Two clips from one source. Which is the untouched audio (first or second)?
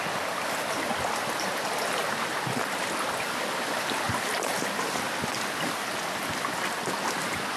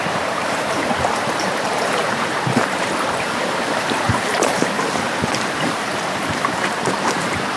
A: first